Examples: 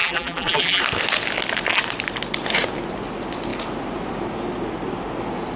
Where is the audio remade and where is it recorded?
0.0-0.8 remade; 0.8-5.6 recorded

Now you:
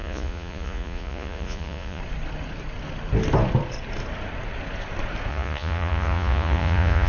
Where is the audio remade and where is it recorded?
0.0-2.0 remade; 2.0-5.3 recorded; 5.3-7.1 remade